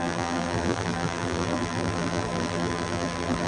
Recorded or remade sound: remade